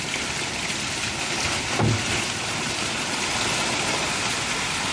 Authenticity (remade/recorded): recorded